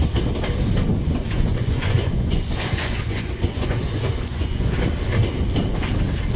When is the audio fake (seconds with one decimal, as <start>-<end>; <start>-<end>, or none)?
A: 0.9-4.7